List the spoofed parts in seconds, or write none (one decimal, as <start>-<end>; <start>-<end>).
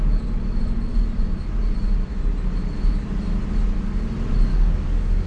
4.5-5.3